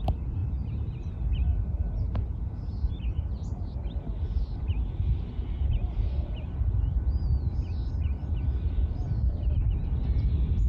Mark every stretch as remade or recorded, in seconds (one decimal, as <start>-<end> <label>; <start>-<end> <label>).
0.0-10.7 recorded